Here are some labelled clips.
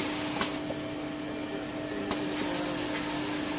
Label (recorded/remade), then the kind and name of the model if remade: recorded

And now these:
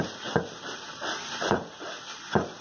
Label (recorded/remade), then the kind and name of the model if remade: remade, vocoder, BigVGAN v2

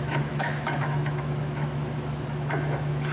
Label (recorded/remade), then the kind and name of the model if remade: remade, autoencoder, DAC-VAE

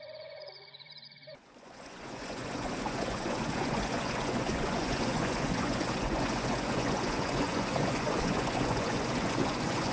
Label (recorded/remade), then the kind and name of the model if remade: remade, vocoder, Vocos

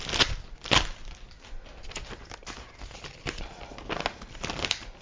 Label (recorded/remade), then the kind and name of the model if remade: recorded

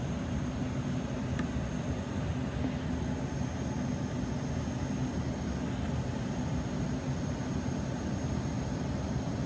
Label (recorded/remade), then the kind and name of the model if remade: recorded